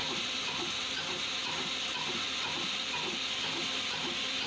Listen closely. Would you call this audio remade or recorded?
recorded